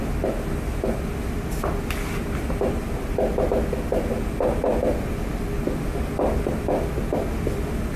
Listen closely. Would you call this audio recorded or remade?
recorded